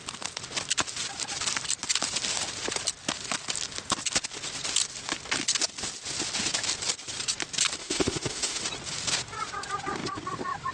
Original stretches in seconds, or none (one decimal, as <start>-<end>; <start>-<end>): 0.0-7.8; 8.6-10.7